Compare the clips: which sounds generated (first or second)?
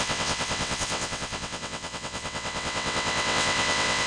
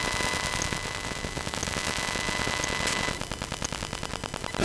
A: first